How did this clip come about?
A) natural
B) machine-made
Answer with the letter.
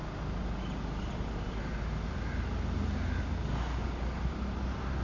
A